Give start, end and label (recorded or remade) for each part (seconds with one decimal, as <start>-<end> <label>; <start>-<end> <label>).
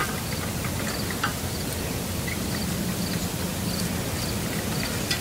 0.0-5.2 recorded